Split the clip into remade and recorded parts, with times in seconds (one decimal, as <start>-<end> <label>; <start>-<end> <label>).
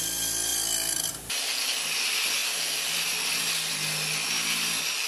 0.0-5.1 recorded